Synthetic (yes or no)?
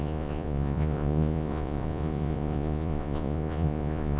yes